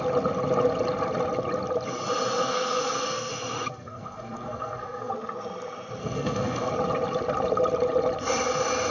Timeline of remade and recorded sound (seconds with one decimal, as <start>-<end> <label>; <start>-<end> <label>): 0.0-2.4 recorded; 2.4-3.3 remade; 3.3-3.7 recorded; 3.7-5.1 remade; 5.1-6.0 recorded; 6.0-6.7 remade; 6.7-8.9 recorded